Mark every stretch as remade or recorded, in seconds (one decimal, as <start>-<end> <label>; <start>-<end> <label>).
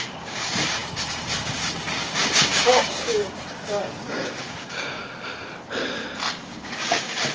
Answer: 0.0-5.0 remade; 5.0-6.5 recorded; 6.5-7.3 remade